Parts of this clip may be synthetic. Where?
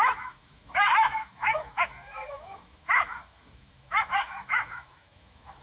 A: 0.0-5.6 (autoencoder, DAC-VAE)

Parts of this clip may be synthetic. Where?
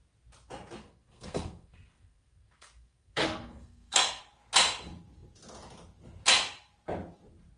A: 0.8-4.2 (codec, SNAC)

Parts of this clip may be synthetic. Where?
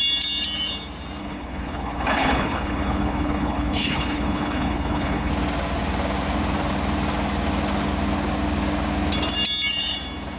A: 1.2-5.3 (codec, HILCodec)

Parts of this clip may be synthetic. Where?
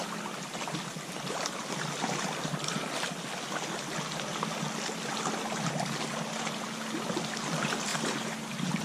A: none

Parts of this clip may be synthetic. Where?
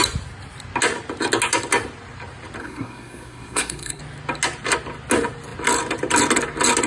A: 2.6-4.0 (codec, SNAC)